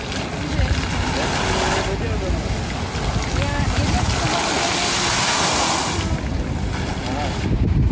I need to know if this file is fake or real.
real